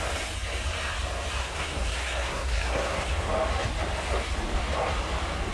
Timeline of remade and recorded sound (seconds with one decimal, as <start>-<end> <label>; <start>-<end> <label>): 0.0-1.4 recorded; 1.4-3.3 remade; 3.3-5.5 recorded

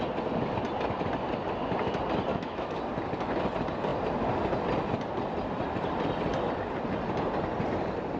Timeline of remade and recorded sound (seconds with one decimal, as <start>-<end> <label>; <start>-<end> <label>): 0.0-2.3 recorded; 2.3-2.8 remade; 2.8-8.2 recorded

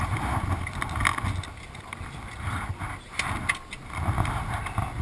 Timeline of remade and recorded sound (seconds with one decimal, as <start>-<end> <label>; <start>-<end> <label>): 0.0-5.0 recorded